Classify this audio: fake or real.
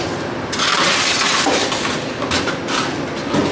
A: real